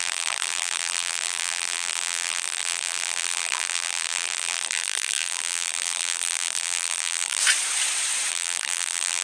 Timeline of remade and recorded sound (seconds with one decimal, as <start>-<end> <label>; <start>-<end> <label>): 0.0-7.4 remade; 7.4-8.3 recorded; 8.3-9.2 remade